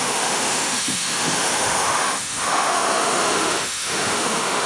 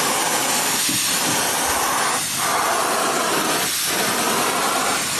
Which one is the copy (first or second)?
first